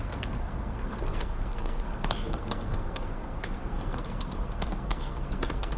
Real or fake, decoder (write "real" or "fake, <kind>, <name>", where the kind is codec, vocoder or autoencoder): fake, codec, SNAC